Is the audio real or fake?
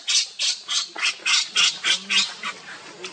real